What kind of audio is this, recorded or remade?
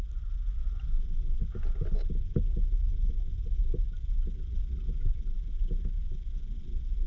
recorded